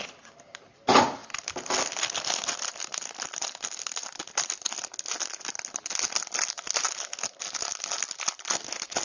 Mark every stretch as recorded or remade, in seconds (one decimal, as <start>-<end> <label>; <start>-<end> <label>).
0.0-9.0 recorded

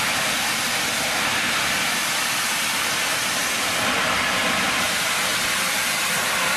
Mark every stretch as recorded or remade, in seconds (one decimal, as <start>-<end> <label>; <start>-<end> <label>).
0.0-6.6 recorded

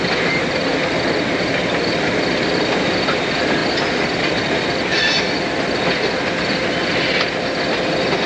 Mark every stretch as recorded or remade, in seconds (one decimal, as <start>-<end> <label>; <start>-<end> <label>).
0.0-8.3 recorded

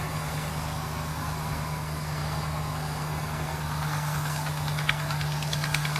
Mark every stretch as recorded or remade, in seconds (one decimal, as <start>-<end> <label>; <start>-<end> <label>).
0.0-6.0 remade

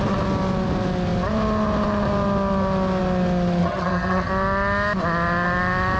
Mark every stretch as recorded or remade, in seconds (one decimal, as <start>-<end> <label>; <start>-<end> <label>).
0.0-3.6 recorded; 3.6-4.3 remade; 4.3-6.0 recorded